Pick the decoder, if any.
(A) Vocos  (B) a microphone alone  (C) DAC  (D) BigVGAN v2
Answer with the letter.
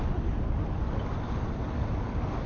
B